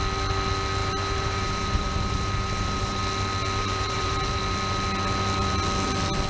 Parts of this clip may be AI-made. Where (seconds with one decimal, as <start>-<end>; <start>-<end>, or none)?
0.8-3.0; 3.6-4.4